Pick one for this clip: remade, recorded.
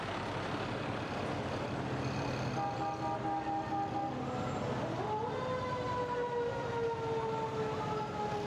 recorded